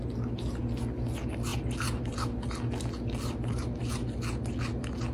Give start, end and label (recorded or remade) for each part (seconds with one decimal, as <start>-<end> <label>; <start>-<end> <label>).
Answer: 0.0-5.1 recorded